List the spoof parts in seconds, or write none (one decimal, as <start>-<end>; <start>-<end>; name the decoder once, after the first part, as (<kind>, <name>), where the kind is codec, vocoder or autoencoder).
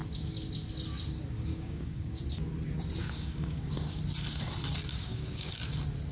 1.5-2.2 (codec, DAC); 3.0-4.0; 4.9-5.5